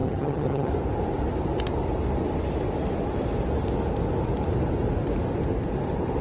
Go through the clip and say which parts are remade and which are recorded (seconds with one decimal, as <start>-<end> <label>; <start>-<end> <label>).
0.0-0.7 remade; 0.7-6.2 recorded